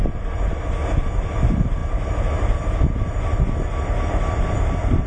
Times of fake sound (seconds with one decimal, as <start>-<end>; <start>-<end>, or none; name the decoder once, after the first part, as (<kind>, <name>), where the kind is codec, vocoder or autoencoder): none